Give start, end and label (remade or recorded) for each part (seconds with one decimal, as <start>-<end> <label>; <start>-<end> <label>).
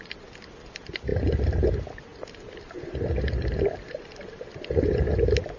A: 0.0-5.6 recorded